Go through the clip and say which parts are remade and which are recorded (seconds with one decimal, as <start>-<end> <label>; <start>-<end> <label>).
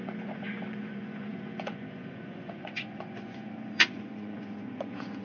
0.0-5.2 remade